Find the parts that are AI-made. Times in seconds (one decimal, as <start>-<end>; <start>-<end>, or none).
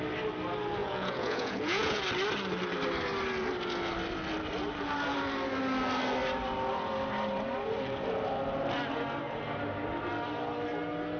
0.8-2.0